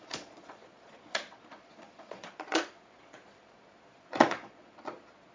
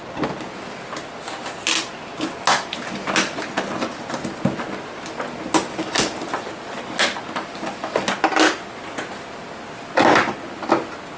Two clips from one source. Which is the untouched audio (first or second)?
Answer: second